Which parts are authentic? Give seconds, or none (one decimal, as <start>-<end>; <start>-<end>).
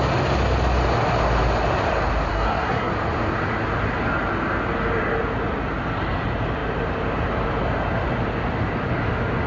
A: 0.0-2.3; 2.9-9.5